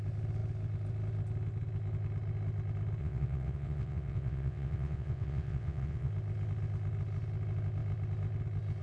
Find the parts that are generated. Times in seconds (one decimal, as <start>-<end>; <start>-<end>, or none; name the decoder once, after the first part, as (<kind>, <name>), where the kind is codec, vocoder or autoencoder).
3.0-6.1 (vocoder, WaveNeXt)

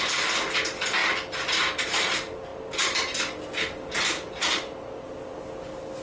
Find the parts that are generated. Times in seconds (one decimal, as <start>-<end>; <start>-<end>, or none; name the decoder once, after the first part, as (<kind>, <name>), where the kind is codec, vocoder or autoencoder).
none

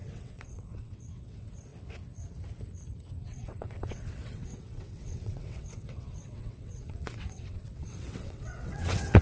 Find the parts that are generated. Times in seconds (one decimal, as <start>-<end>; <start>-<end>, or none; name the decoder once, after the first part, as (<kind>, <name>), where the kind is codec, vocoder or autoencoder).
0.0-1.7 (vocoder, WaveNeXt); 3.2-9.2

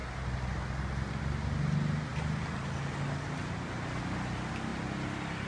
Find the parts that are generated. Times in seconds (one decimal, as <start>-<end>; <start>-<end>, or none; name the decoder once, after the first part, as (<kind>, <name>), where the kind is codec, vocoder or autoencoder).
none

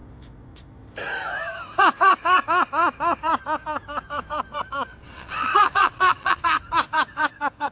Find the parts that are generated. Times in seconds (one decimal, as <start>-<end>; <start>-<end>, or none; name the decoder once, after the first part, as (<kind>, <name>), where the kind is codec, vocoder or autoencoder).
4.9-6.4 (vocoder, WaveNeXt)

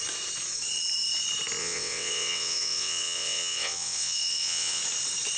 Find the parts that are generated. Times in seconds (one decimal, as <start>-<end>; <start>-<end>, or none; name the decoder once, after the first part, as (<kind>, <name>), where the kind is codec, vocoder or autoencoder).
1.6-4.8 (vocoder, WaveNeXt)

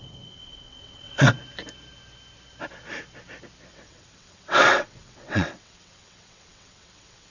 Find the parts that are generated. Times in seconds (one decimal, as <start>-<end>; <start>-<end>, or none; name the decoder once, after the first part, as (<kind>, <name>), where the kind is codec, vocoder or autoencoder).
0.0-1.3 (vocoder, WaveNeXt); 3.7-7.3